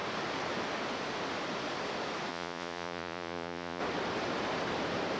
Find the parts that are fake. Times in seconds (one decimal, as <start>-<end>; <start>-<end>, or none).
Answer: 2.3-3.8